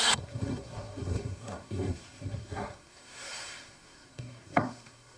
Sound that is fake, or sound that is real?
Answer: fake